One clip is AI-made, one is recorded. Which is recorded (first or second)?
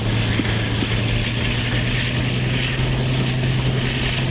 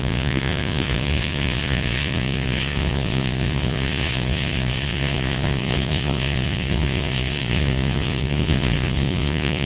first